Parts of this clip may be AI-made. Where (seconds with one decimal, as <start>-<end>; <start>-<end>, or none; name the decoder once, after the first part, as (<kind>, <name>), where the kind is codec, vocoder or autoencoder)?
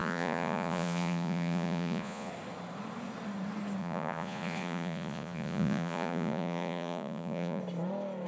0.0-2.3 (vocoder, Vocos); 3.8-7.6